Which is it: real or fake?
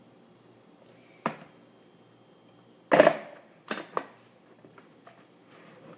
real